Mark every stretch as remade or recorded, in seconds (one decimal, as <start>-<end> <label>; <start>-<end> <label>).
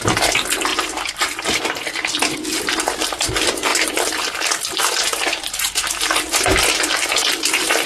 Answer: 0.0-7.9 recorded